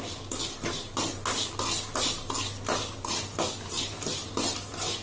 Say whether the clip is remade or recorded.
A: recorded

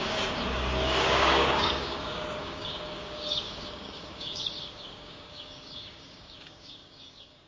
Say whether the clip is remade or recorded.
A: remade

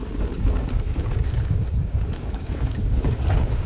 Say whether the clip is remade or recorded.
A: remade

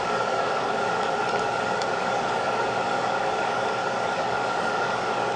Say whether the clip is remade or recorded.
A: remade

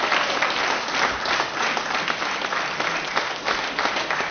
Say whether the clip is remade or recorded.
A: recorded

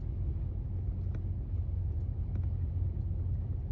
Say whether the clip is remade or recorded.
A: recorded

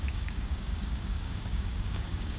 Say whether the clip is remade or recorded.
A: remade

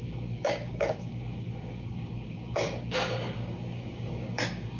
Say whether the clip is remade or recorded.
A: remade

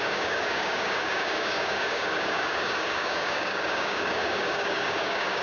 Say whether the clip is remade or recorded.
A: remade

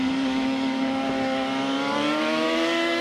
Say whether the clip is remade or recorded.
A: remade